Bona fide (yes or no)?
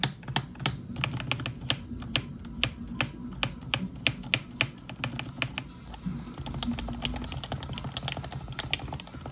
yes